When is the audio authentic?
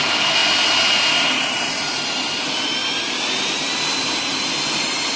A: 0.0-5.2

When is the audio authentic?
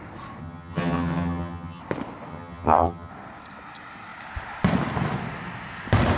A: 0.0-0.4; 1.8-2.3; 3.1-6.2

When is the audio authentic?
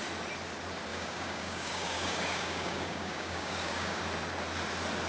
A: 0.0-0.9; 4.0-5.1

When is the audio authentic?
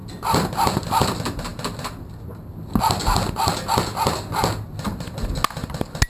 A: 0.0-6.1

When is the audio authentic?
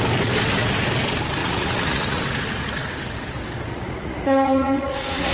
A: 0.0-1.4; 2.2-3.7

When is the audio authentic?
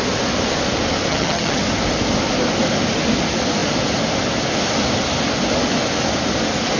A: 0.0-1.1; 1.6-6.8